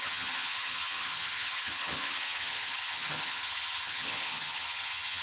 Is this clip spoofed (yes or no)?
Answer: yes